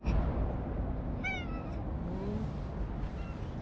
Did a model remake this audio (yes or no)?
no